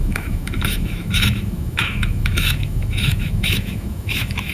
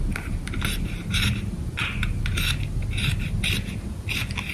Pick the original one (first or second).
second